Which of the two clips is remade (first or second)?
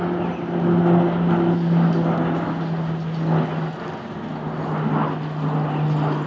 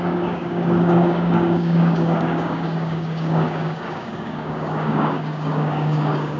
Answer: second